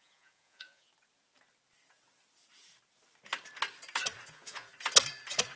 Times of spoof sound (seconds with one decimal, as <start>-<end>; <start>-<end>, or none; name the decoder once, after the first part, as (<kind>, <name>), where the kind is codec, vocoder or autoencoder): 0.0-0.9 (vocoder, Vocos); 4.3-4.7